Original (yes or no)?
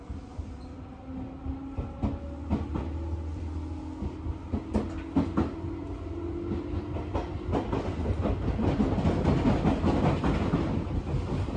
yes